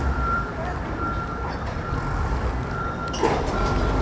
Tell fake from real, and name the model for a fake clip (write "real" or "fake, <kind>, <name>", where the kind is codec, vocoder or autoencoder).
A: fake, vocoder, BigVGAN v2